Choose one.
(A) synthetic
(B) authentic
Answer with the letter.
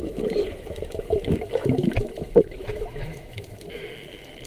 A